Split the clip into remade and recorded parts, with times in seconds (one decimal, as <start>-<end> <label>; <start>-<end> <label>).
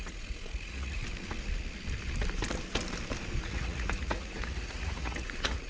0.0-1.0 remade; 1.0-3.4 recorded; 3.4-5.7 remade